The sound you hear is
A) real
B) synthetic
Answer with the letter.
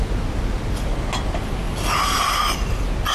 A